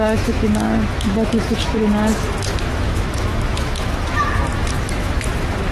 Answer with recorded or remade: remade